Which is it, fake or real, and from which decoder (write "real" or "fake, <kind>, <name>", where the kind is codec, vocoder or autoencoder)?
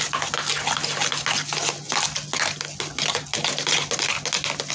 real